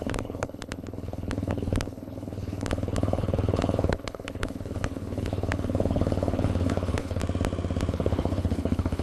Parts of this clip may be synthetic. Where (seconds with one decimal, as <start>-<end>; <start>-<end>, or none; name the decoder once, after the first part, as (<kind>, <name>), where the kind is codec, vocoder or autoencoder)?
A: 0.0-7.2 (codec, HILCodec); 7.9-9.0